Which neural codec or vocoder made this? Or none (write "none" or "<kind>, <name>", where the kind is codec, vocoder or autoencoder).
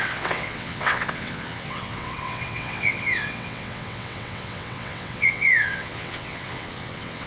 vocoder, WaveNeXt